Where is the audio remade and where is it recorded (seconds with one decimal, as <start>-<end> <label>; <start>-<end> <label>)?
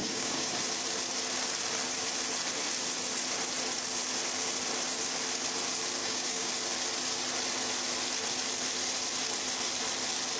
0.0-0.5 remade; 0.5-6.0 recorded; 6.0-6.5 remade; 6.5-10.4 recorded